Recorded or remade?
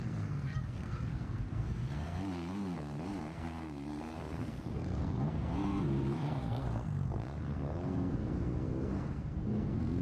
remade